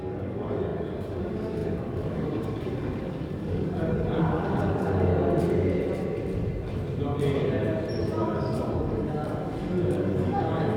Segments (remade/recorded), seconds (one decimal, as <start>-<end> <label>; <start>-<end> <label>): 0.0-5.1 remade; 5.1-8.0 recorded; 8.0-10.8 remade